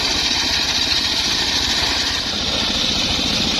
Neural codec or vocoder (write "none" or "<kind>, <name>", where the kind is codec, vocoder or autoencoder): vocoder, BigVGAN v2